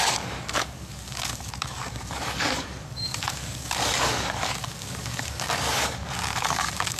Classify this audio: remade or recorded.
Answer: remade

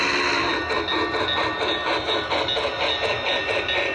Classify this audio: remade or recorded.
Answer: recorded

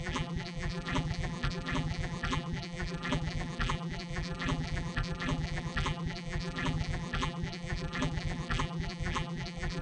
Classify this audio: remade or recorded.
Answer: remade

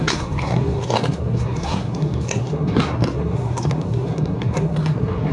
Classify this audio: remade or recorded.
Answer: remade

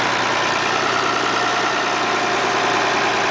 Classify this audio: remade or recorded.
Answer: recorded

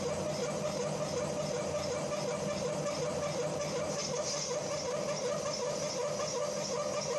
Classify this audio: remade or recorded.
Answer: recorded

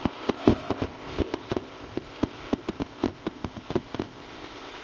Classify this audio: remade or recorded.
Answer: remade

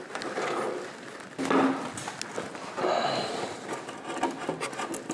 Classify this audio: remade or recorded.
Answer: recorded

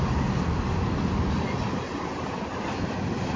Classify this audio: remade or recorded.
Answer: recorded